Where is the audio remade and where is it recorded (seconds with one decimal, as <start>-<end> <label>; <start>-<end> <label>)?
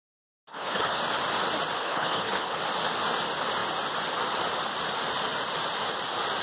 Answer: 0.0-0.5 recorded; 0.5-1.0 remade; 1.0-1.8 recorded; 1.8-2.6 remade; 2.6-6.4 recorded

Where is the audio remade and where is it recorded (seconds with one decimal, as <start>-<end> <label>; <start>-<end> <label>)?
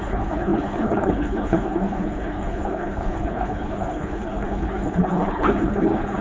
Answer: 0.0-6.2 remade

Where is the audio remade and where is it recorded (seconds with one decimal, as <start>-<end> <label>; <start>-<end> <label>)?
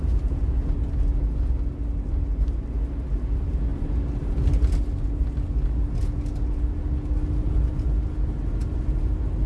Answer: 0.0-9.5 recorded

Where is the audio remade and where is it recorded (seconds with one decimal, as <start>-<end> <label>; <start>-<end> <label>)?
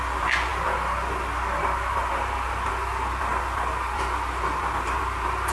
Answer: 0.0-5.5 recorded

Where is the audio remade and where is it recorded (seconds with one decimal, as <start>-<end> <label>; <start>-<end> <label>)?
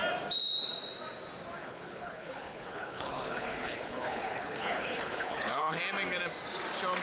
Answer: 0.0-1.6 recorded; 1.6-5.8 remade; 5.8-7.0 recorded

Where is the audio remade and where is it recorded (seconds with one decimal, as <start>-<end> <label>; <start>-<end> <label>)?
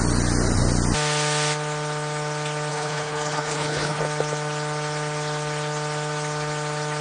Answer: 0.0-2.7 recorded; 2.7-4.0 remade; 4.0-7.0 recorded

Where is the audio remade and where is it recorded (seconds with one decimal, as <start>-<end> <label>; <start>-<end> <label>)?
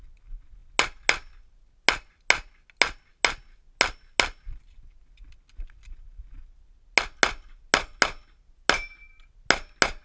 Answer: 0.0-10.0 recorded